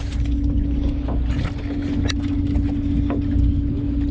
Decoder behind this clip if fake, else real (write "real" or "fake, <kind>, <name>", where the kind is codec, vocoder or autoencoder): real